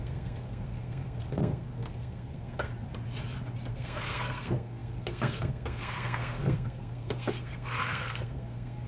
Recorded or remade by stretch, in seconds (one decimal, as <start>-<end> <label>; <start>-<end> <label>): 0.0-2.7 remade; 2.7-3.7 recorded; 3.7-8.9 remade